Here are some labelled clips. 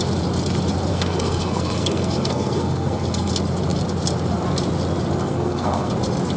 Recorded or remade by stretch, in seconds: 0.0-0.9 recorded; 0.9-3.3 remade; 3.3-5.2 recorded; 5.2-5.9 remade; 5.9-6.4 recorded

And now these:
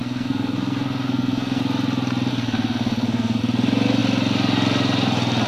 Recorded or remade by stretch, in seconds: 0.0-1.6 remade; 1.6-2.3 recorded; 2.3-3.4 remade; 3.4-5.5 recorded

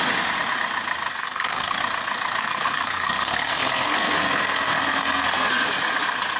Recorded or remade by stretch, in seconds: 0.0-1.1 recorded; 1.1-1.8 remade; 1.8-2.4 recorded; 2.4-5.5 remade; 5.5-6.4 recorded

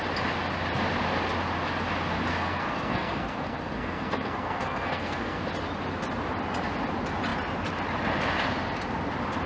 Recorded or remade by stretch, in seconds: 0.0-2.3 recorded; 2.3-5.4 remade; 5.4-9.5 recorded